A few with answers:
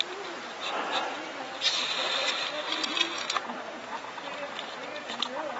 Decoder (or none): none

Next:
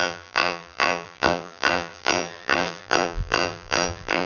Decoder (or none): vocoder, BigVGAN v2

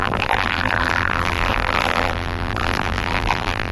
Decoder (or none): vocoder, BigVGAN v2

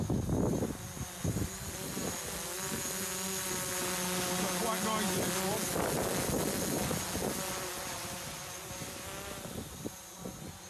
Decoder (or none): none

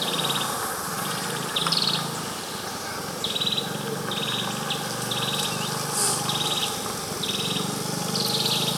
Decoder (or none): none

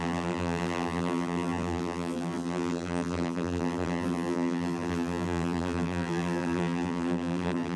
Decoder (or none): vocoder, BigVGAN v2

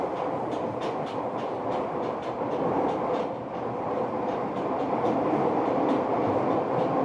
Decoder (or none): none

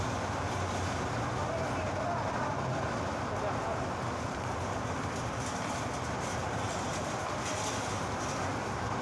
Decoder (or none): vocoder, BigVGAN v2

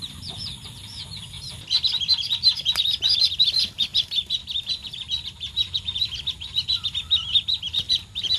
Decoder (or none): vocoder, BigVGAN v2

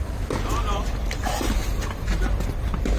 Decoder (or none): vocoder, BigVGAN v2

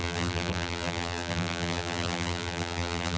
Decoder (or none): vocoder, BigVGAN v2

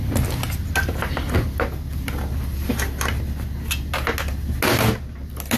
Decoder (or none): none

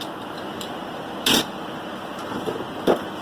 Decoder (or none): none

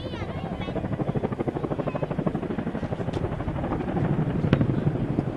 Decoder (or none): none